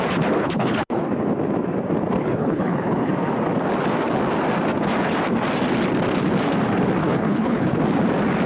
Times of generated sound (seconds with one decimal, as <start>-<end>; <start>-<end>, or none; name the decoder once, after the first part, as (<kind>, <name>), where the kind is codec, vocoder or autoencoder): 0.4-1.0 (codec, HILCodec); 2.2-3.1; 7.0-7.8